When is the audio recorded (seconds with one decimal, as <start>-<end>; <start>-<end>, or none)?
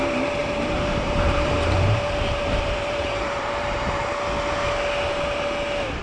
0.0-0.4; 4.0-6.0